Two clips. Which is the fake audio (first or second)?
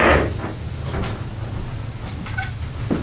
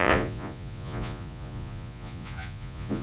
second